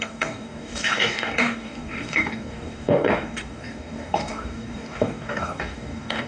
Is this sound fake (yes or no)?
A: yes